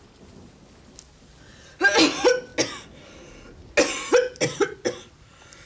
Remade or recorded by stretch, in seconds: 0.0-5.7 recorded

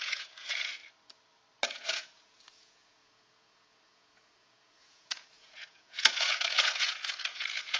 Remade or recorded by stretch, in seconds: 0.0-0.8 remade; 0.8-1.7 recorded; 1.7-7.8 remade

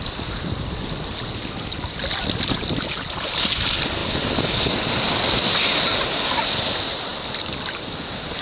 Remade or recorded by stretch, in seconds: 0.0-8.4 recorded

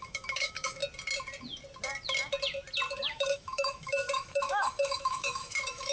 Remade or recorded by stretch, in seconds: 0.0-0.8 remade; 0.8-3.0 recorded; 3.0-5.9 remade

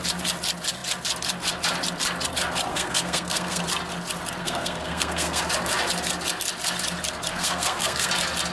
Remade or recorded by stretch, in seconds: 0.0-2.7 recorded; 2.7-3.6 remade; 3.6-4.4 recorded; 4.4-5.4 remade; 5.4-7.3 recorded; 7.3-8.1 remade; 8.1-8.5 recorded

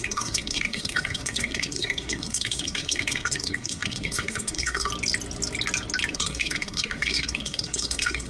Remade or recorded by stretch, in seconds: 0.0-4.9 remade; 4.9-6.1 recorded; 6.1-8.3 remade